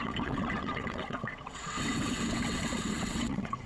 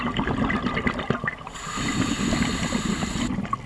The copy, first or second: first